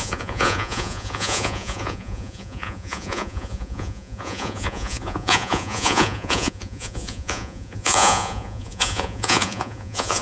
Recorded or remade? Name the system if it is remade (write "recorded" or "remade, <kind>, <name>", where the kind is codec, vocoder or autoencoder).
remade, vocoder, Vocos